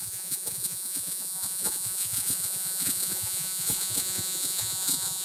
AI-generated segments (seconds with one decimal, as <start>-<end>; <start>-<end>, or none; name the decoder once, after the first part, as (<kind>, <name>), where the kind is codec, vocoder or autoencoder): 0.0-5.2 (vocoder, Vocos)